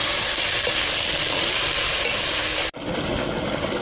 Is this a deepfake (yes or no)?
no